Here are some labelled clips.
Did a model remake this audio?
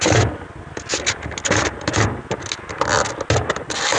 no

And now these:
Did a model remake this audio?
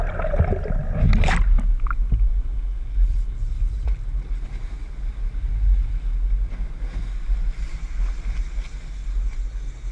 no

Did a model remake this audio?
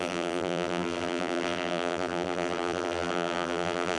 yes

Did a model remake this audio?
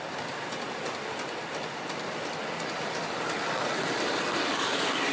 no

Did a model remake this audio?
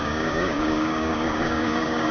yes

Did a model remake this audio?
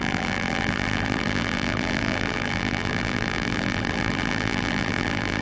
yes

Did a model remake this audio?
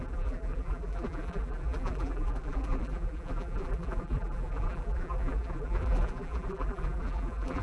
yes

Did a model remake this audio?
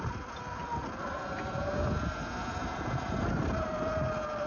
no